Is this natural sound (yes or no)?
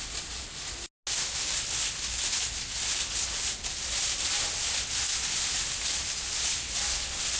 yes